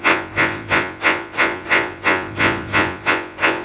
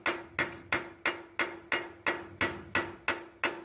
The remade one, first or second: first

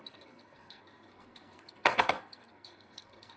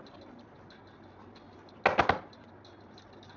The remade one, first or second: first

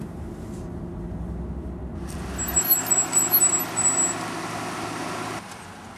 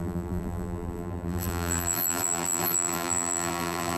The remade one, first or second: second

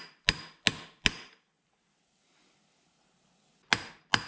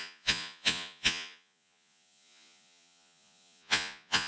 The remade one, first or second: second